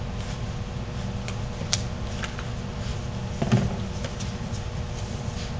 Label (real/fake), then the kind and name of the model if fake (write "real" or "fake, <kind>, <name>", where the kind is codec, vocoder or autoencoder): real